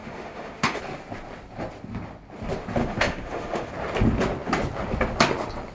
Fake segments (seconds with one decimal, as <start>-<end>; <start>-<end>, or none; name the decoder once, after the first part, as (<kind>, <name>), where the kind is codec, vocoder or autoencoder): 0.0-0.8 (autoencoder, DAC-VAE); 2.8-3.7